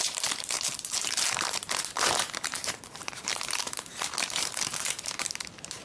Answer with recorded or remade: remade